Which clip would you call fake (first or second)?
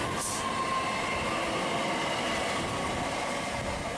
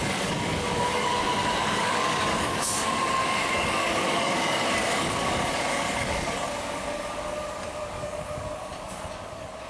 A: second